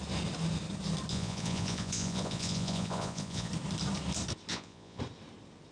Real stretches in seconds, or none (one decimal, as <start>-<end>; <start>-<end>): 0.0-1.1; 3.5-4.5; 5.0-5.7

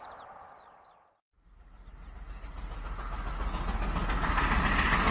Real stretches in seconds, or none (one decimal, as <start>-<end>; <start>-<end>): 0.0-5.1

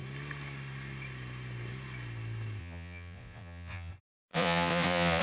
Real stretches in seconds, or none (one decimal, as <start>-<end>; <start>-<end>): 0.0-2.6; 3.9-4.3

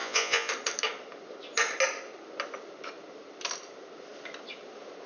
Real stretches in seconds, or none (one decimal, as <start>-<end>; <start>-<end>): 0.5-5.1